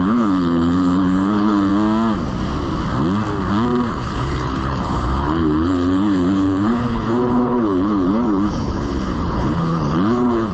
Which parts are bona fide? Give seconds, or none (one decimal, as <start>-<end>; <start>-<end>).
1.7-3.9